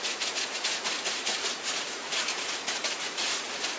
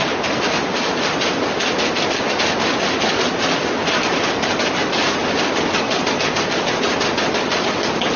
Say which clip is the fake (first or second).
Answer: first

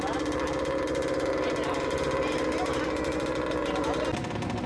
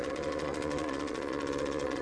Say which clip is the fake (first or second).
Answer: second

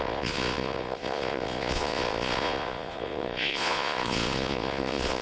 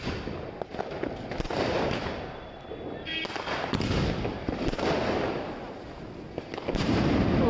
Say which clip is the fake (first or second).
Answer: first